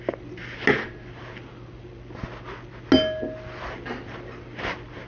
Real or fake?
real